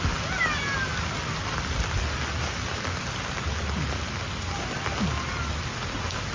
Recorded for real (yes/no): yes